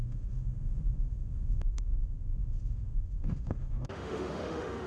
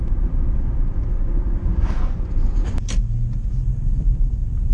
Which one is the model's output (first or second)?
first